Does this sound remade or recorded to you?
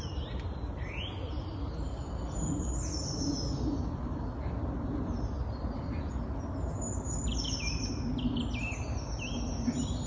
recorded